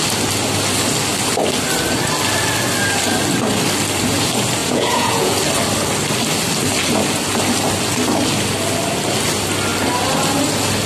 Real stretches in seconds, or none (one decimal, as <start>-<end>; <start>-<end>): 0.0-4.6; 5.4-10.9